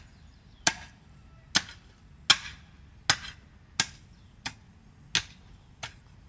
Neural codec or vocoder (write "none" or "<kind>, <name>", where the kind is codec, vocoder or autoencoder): none